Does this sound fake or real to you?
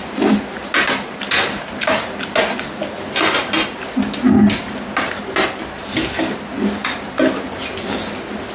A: real